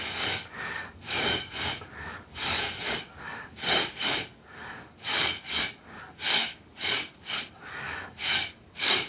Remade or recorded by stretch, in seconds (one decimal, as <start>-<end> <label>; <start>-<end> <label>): 0.0-9.1 remade